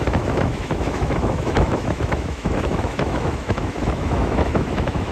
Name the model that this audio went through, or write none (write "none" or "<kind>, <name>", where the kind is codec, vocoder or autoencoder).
autoencoder, DAC-VAE